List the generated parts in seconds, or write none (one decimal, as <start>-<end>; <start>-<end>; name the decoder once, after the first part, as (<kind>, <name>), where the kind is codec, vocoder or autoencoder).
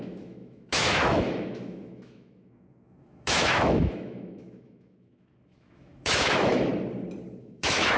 0.0-6.7 (autoencoder, DAC-VAE); 7.4-8.0